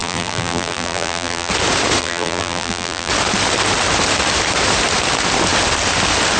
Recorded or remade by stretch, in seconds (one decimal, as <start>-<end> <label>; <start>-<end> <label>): 0.0-1.5 remade; 1.5-2.0 recorded; 2.0-3.1 remade; 3.1-6.4 recorded